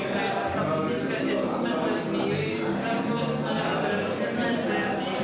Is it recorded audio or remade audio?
recorded